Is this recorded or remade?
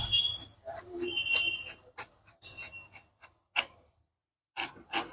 recorded